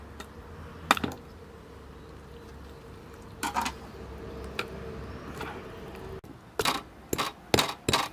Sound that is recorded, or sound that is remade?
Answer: recorded